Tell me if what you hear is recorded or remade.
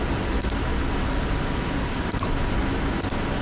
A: recorded